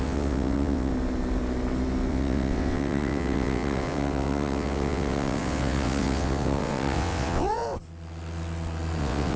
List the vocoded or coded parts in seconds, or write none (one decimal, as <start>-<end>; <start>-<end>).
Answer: 0.0-0.9; 2.1-7.6; 9.0-9.4